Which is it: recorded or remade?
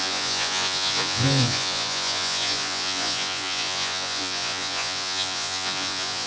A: remade